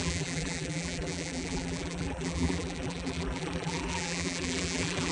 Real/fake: fake